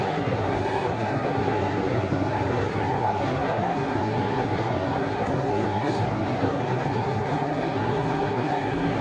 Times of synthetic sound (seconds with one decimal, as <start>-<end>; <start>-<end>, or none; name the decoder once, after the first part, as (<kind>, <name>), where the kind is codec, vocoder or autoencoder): 0.0-9.0 (codec, SNAC)